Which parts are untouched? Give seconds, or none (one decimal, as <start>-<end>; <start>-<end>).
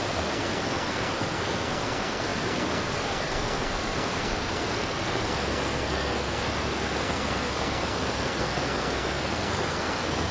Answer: none